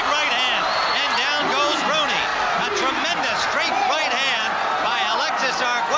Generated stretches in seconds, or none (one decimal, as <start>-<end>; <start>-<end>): none